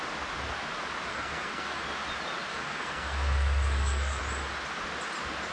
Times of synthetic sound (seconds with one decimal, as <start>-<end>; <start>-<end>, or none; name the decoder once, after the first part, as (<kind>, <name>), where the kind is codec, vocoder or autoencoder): 1.1-1.8 (codec, SNAC); 2.5-4.2